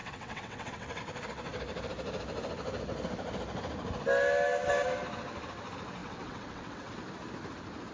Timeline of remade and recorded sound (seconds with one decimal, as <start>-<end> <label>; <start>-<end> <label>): 0.0-1.0 remade; 1.0-6.0 recorded; 6.0-6.9 remade; 6.9-7.9 recorded